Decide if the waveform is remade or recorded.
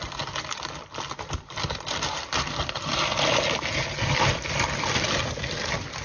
recorded